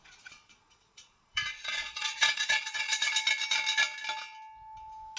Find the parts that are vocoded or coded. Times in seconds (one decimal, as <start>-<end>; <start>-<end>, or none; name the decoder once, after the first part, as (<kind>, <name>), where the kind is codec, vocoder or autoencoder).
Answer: 0.0-3.1 (vocoder, Vocos)